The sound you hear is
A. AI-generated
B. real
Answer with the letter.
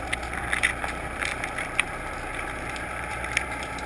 A